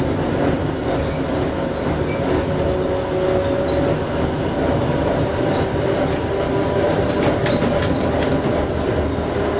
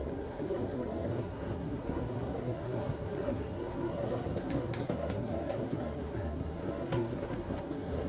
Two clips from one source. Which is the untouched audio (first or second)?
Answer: first